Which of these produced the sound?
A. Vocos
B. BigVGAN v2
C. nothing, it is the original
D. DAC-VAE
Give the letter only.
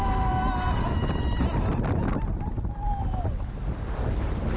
C